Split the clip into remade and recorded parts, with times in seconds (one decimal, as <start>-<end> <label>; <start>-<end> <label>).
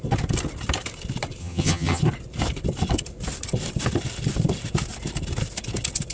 0.0-1.4 recorded; 1.4-2.0 remade; 2.0-6.1 recorded